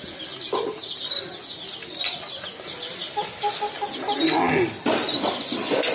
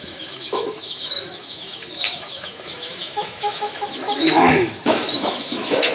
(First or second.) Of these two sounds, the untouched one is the first